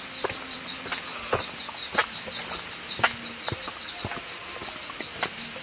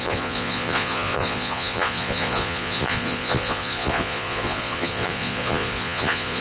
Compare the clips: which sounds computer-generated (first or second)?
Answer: second